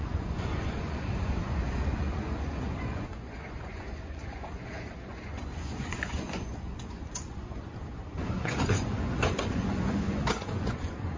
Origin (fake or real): fake